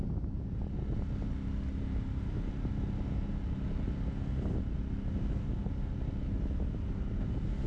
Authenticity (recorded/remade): recorded